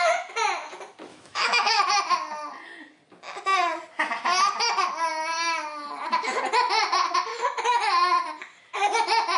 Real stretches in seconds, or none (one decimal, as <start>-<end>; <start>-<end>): 0.0-1.1; 1.8-7.3; 7.8-9.4